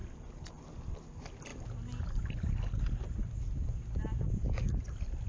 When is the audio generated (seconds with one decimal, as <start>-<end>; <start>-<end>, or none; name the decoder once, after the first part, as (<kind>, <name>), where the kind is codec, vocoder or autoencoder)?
none